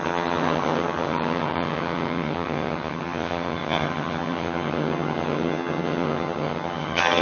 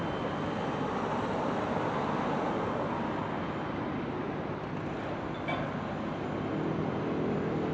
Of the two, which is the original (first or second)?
second